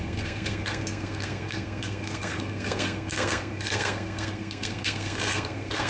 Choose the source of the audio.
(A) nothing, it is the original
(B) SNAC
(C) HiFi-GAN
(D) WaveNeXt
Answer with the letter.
B